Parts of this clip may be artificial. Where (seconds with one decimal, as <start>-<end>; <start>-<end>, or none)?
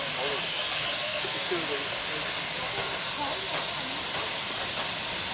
0.5-1.5